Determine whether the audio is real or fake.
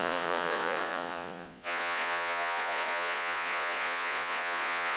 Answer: fake